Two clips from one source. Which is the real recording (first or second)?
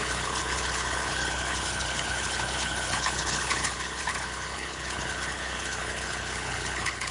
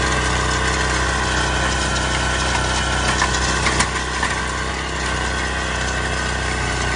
second